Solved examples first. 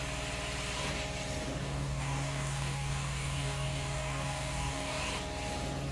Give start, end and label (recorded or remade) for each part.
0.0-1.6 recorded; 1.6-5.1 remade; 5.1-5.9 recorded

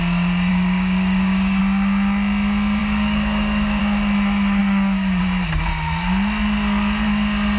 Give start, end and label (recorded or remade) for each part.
0.0-0.5 recorded; 0.5-1.6 remade; 1.6-2.8 recorded; 2.8-3.8 remade; 3.8-4.6 recorded; 4.6-5.2 remade; 5.2-7.6 recorded

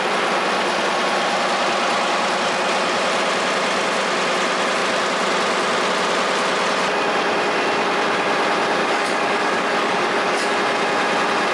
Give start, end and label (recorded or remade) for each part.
0.0-8.8 recorded; 8.8-10.5 remade; 10.5-11.5 recorded

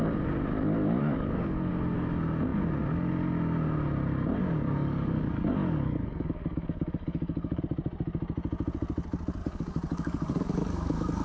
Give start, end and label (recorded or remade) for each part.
0.0-1.0 recorded; 1.0-1.7 remade; 1.7-4.4 recorded; 4.4-7.6 remade; 7.6-9.4 recorded; 9.4-11.2 remade

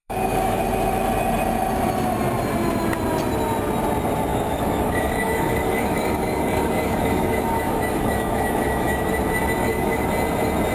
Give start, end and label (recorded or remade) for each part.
0.0-0.6 remade; 0.6-4.3 recorded; 4.3-9.1 remade; 9.1-9.6 recorded; 9.6-10.1 remade; 10.1-10.7 recorded

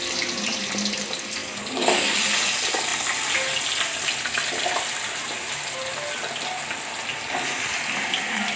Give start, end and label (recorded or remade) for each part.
0.0-1.4 recorded; 1.4-2.2 remade; 2.2-8.6 recorded

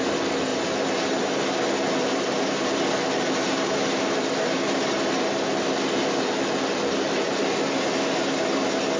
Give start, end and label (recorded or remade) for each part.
0.0-9.0 recorded